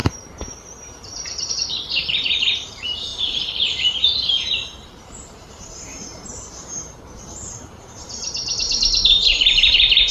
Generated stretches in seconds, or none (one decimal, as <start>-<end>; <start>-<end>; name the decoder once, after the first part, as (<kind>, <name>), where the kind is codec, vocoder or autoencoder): 0.0-10.1 (vocoder, BigVGAN v2)